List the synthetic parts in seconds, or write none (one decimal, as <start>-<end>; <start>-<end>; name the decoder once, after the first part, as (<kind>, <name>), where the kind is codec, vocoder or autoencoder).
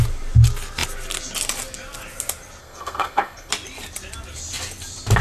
2.6-3.5 (codec, SNAC)